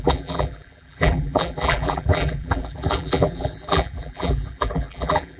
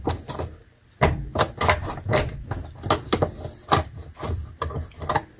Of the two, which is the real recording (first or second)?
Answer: second